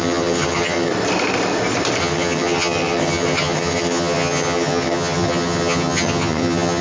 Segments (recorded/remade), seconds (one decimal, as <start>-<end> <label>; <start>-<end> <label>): 0.0-0.9 remade; 0.9-2.0 recorded; 2.0-6.8 remade